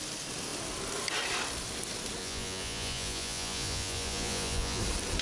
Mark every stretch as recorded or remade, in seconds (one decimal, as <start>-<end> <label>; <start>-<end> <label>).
0.0-2.2 recorded; 2.2-4.8 remade; 4.8-5.2 recorded